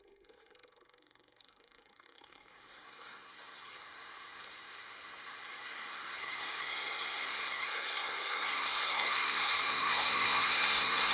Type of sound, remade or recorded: remade